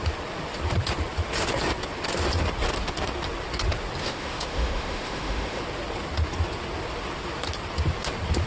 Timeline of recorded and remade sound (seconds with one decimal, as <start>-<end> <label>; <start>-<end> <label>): 0.0-4.0 recorded; 4.0-5.6 remade; 5.6-8.5 recorded